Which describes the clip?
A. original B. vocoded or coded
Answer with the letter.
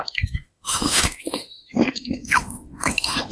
B